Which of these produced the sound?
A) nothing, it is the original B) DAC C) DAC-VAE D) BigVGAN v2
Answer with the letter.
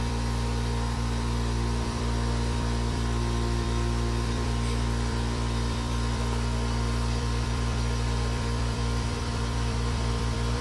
D